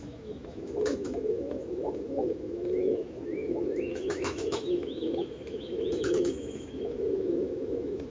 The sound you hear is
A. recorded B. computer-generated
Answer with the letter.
B